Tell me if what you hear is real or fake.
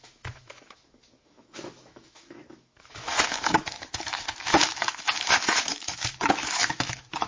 fake